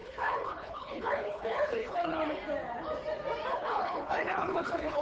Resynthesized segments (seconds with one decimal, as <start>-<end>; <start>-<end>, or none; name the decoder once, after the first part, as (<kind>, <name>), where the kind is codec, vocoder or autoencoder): 0.0-2.2 (codec, HILCodec); 3.5-5.0